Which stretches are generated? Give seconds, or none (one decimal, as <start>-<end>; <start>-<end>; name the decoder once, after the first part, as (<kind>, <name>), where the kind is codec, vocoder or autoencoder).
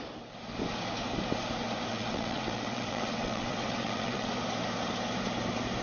1.9-4.3 (vocoder, WaveNeXt)